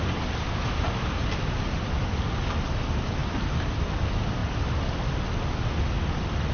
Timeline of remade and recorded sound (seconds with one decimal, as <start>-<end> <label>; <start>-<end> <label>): 0.0-3.2 recorded; 3.2-3.8 remade; 3.8-6.5 recorded